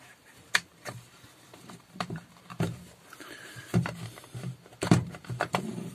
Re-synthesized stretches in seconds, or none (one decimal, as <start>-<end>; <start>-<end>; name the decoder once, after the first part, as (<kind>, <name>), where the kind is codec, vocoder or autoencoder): 0.0-5.9 (vocoder, BigVGAN v2)